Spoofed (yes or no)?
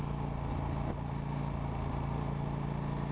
no